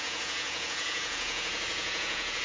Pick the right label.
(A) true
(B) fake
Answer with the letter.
B